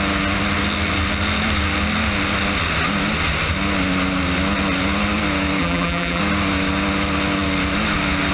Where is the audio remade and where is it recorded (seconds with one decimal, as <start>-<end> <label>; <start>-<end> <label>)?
0.0-5.6 recorded; 5.6-6.2 remade; 6.2-8.3 recorded